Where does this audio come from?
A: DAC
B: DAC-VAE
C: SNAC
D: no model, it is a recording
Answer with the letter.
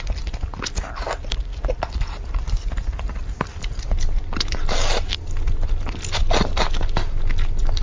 D